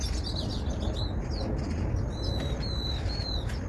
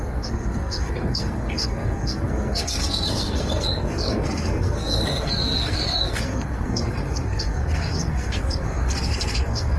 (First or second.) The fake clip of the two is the second